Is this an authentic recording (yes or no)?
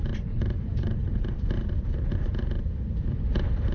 no